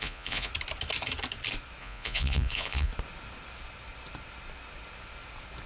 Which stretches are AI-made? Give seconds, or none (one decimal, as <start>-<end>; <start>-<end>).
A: 0.0-0.5; 1.8-2.9